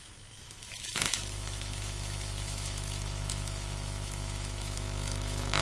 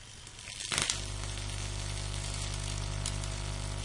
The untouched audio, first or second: second